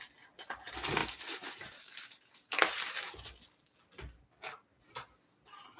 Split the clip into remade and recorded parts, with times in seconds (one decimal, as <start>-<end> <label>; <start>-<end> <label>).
0.0-1.0 recorded; 1.0-2.5 remade; 2.5-5.8 recorded